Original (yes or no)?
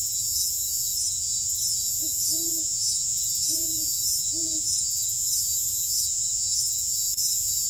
no